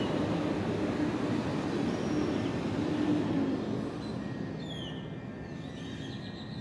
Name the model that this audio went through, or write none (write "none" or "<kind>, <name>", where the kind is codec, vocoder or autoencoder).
none